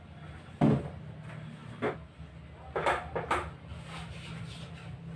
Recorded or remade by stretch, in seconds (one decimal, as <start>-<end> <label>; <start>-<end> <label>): 0.0-5.2 recorded